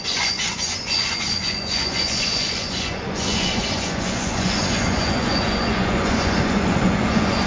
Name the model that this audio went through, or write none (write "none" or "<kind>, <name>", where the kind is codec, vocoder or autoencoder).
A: vocoder, Vocos